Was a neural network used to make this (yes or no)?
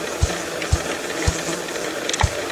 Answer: no